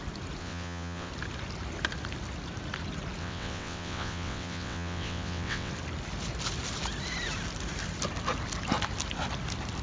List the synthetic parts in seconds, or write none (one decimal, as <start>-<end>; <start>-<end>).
0.4-1.1; 3.2-5.7